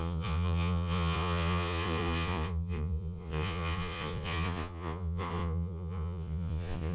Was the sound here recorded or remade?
remade